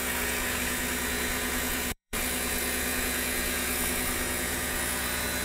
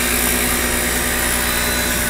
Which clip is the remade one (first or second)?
first